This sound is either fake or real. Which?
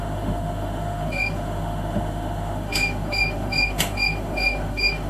fake